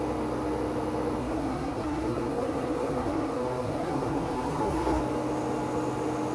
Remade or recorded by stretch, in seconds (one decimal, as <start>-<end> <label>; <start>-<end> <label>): 0.0-1.2 recorded; 1.2-5.0 remade; 5.0-6.3 recorded